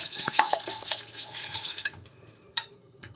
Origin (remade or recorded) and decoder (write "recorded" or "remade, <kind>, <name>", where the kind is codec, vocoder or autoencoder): remade, codec, SNAC